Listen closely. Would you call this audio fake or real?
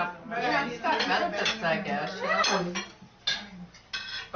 real